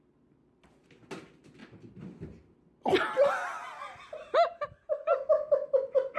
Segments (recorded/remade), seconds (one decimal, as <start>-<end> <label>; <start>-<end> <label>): 0.0-6.2 recorded